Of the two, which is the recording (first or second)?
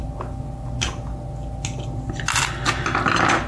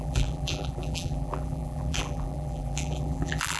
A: first